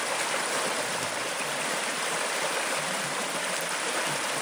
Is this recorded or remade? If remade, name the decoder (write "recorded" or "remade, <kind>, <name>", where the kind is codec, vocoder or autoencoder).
recorded